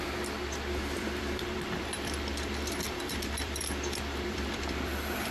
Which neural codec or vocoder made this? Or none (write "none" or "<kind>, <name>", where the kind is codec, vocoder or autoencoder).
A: vocoder, BigVGAN v2